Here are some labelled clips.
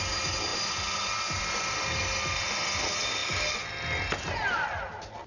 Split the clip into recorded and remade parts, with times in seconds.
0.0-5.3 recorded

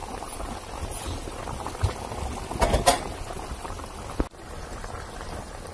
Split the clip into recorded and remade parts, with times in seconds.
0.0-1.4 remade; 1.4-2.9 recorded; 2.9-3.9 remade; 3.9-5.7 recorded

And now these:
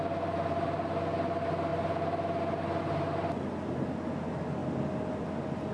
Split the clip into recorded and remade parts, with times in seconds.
0.0-5.7 recorded

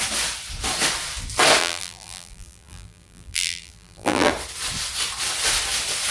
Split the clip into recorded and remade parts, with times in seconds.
0.0-1.6 recorded; 1.6-4.3 remade; 4.3-6.1 recorded